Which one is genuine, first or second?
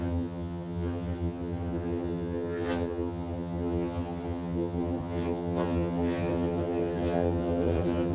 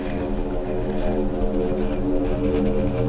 second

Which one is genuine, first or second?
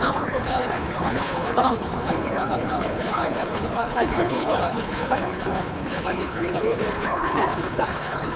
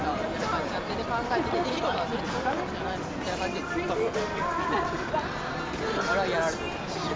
second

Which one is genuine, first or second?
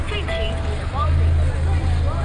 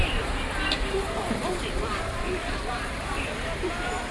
first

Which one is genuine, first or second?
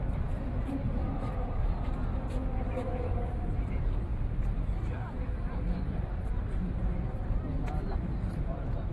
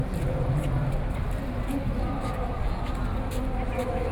second